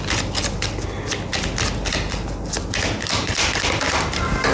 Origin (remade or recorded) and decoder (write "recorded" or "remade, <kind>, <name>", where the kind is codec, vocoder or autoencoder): recorded